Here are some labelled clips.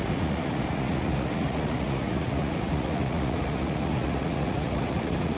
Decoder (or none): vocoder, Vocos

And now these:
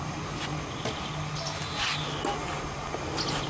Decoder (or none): none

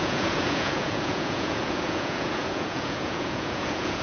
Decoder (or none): vocoder, Vocos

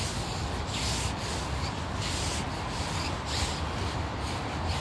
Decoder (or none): none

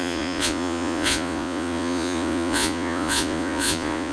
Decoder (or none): vocoder, Vocos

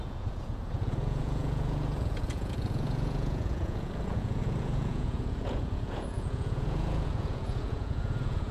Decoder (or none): vocoder, Vocos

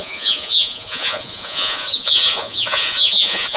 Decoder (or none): vocoder, Vocos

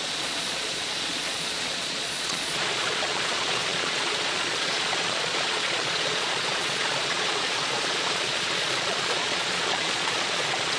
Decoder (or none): vocoder, Vocos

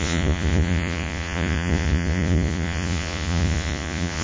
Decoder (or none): vocoder, Vocos